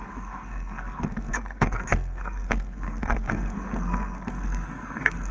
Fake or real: fake